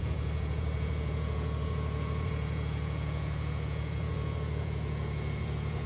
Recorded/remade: remade